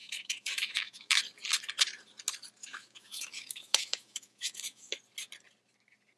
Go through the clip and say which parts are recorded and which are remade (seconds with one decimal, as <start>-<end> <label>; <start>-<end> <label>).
0.0-1.2 remade; 1.2-2.6 recorded; 2.6-5.0 remade; 5.0-6.2 recorded